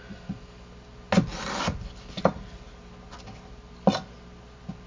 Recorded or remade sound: recorded